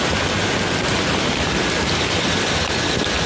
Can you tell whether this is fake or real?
fake